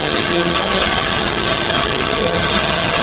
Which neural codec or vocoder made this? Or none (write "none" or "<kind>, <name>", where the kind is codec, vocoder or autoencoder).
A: vocoder, HiFi-GAN